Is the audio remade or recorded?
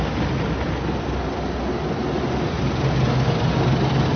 recorded